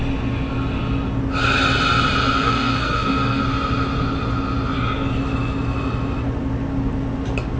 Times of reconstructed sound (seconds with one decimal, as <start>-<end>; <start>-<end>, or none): 2.4-3.4